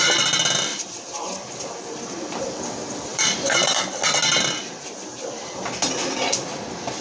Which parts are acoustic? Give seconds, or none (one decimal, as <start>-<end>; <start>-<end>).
0.0-3.1; 4.2-7.0

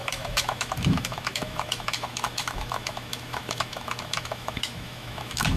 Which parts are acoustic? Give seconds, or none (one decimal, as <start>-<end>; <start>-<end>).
none

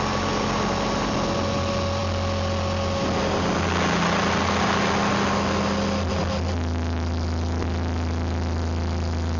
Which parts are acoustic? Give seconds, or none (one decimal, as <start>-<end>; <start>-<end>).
0.0-9.4

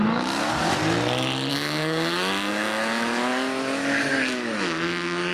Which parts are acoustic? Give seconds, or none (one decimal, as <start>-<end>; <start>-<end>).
0.8-1.5

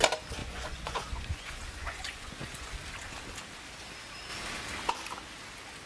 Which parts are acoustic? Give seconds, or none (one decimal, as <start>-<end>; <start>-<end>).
0.0-0.4; 2.7-5.9

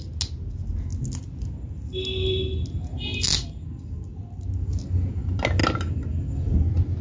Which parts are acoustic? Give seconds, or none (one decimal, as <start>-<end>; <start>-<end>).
0.0-7.0

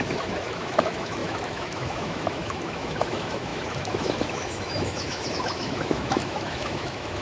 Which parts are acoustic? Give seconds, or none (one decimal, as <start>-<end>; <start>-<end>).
none